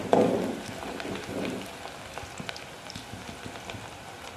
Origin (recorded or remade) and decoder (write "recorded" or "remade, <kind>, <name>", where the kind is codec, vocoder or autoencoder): recorded